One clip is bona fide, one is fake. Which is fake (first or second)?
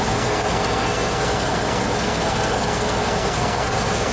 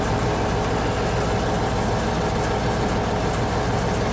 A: first